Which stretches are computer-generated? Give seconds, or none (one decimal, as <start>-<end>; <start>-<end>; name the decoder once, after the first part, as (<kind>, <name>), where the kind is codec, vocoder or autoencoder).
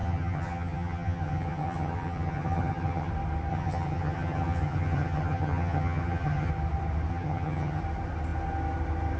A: 0.0-3.1 (vocoder, HiFi-GAN); 3.5-6.5; 7.1-7.8